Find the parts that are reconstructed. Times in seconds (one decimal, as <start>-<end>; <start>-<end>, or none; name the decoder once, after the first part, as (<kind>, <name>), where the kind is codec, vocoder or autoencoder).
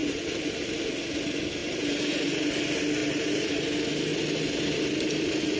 0.0-0.6 (vocoder, BigVGAN v2); 1.6-2.6; 3.0-3.5; 4.1-5.6